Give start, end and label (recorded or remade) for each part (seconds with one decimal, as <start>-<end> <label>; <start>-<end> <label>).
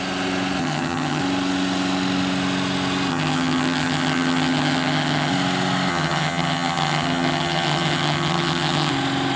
0.0-0.6 recorded; 0.6-1.2 remade; 1.2-3.1 recorded; 3.1-5.3 remade; 5.3-5.9 recorded; 5.9-8.9 remade; 8.9-9.4 recorded